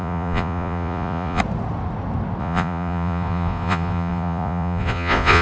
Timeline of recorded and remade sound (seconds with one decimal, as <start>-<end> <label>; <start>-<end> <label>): 0.0-1.4 remade; 1.4-2.4 recorded; 2.4-5.4 remade